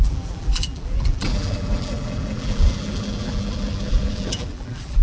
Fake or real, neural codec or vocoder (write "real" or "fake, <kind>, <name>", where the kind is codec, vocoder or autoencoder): fake, vocoder, BigVGAN v2